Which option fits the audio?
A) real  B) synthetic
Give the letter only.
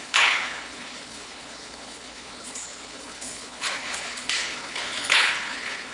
B